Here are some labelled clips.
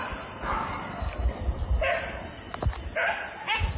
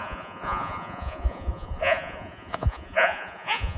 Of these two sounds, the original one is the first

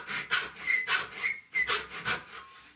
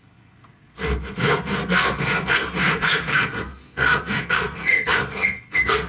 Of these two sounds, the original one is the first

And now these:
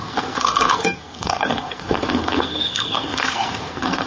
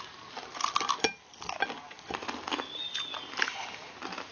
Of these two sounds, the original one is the second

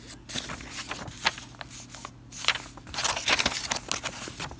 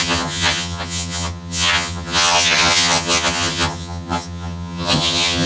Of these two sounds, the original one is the first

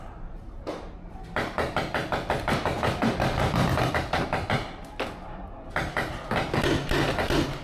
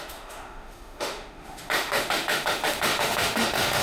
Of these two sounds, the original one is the first